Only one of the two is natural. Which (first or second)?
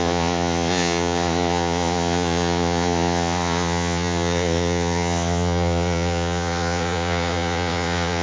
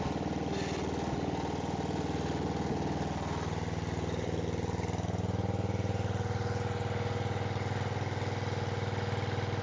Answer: second